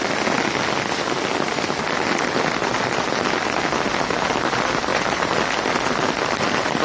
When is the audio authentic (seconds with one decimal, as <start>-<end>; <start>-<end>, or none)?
0.0-4.9; 5.4-6.8